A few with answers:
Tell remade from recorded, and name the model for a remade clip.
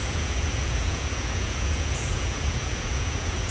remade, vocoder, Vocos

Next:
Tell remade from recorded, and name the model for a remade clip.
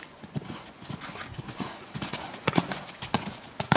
remade, vocoder, Vocos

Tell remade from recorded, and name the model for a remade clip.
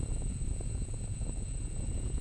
remade, vocoder, Vocos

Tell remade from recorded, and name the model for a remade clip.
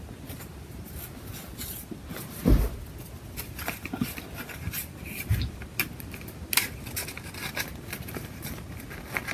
recorded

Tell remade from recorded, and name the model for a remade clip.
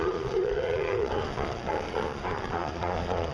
remade, vocoder, Vocos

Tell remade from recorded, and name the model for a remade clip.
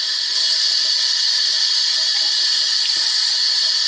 recorded